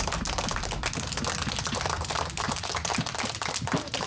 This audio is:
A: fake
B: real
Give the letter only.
B